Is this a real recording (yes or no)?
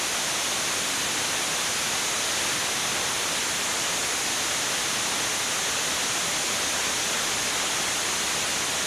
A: yes